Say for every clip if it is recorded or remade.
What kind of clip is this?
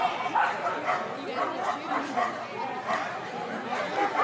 recorded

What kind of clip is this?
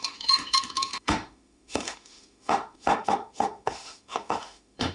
remade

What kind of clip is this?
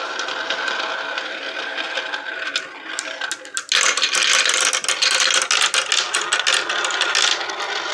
recorded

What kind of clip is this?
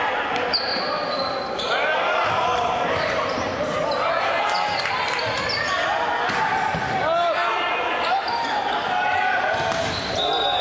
recorded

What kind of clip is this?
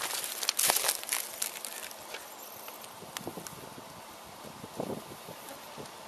recorded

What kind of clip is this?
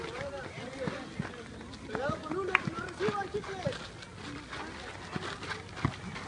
recorded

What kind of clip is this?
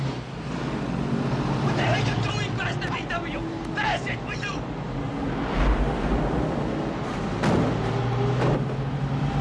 recorded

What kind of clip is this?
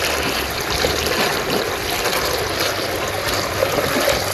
recorded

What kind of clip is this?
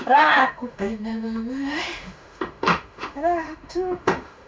remade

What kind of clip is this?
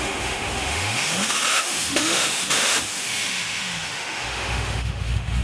remade